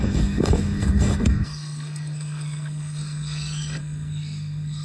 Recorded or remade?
remade